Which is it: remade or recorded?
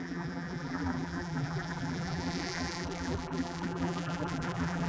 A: remade